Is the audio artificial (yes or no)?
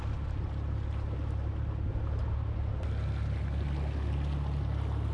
no